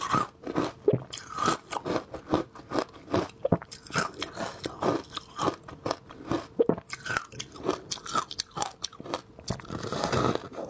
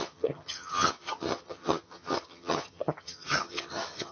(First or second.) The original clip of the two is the first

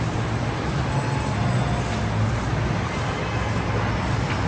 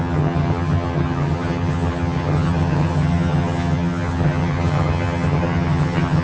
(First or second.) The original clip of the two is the first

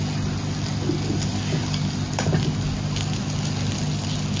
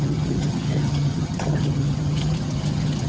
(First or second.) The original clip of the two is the first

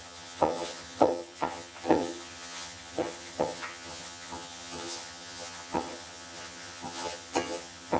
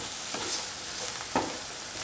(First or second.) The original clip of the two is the second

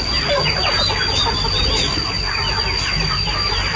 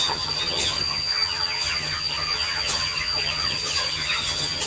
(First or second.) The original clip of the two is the first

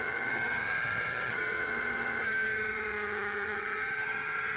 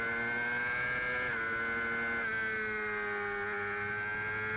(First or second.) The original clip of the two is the second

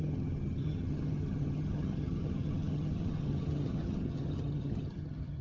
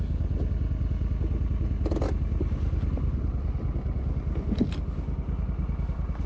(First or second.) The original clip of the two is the second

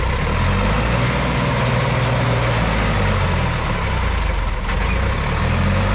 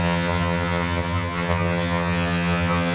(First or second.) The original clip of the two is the first